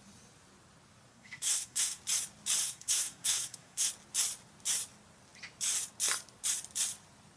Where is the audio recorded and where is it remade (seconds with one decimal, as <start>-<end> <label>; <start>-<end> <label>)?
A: 0.0-1.1 recorded; 1.1-2.0 remade; 2.0-2.6 recorded; 2.6-3.9 remade; 3.9-7.4 recorded